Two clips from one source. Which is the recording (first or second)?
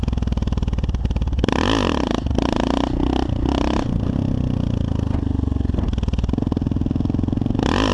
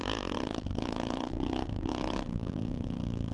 first